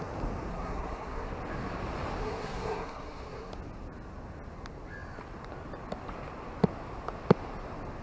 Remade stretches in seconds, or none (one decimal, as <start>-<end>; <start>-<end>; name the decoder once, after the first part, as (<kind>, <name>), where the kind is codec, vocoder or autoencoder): 0.5-1.3 (codec, SNAC); 2.2-3.5